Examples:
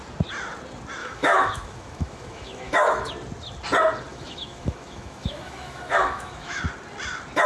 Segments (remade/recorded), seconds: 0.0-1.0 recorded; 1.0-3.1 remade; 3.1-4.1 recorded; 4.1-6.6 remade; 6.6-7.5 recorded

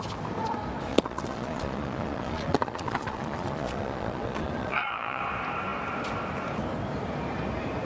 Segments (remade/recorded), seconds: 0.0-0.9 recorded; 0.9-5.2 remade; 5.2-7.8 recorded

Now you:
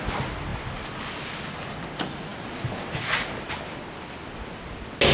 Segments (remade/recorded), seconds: 0.0-5.1 recorded

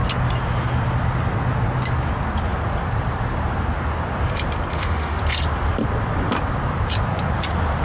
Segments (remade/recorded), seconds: 0.0-4.7 recorded; 4.7-5.2 remade; 5.2-7.8 recorded

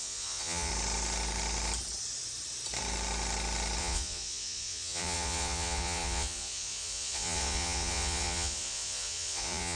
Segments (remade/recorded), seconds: 0.0-0.7 remade; 0.7-3.8 recorded; 3.8-9.8 remade

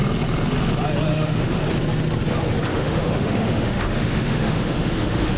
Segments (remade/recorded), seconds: 0.0-1.1 recorded; 1.1-1.6 remade; 1.6-2.7 recorded; 2.7-5.4 remade

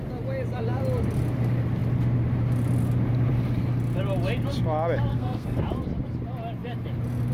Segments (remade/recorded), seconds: 0.0-5.1 recorded; 5.1-5.6 remade; 5.6-7.3 recorded

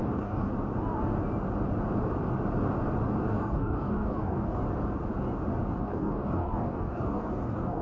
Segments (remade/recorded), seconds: 0.0-0.5 remade; 0.5-3.2 recorded; 3.2-4.6 remade; 4.6-5.8 recorded; 5.8-7.8 remade